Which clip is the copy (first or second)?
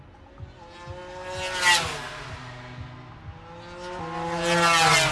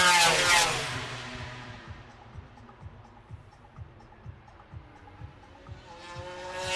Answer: second